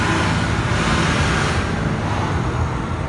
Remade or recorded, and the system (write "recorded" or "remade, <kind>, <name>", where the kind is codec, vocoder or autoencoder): recorded